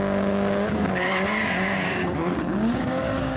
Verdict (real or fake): fake